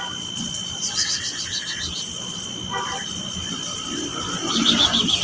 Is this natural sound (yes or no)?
yes